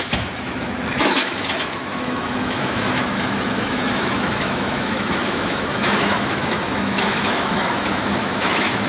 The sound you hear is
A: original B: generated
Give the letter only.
B